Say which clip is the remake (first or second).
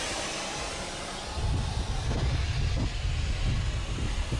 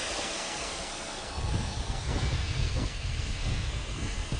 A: second